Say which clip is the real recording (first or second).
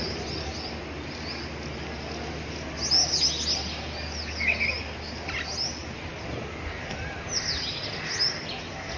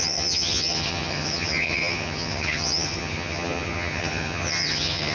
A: first